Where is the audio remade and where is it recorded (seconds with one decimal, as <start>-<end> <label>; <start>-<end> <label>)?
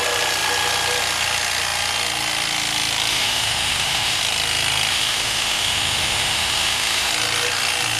0.0-3.1 recorded; 3.1-4.2 remade; 4.2-4.9 recorded; 4.9-7.1 remade; 7.1-8.0 recorded